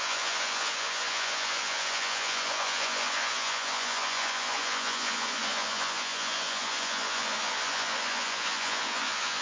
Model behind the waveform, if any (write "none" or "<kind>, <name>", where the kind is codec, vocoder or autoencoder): vocoder, Vocos